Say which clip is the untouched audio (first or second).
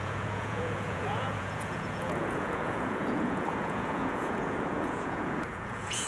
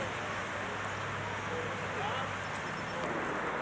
second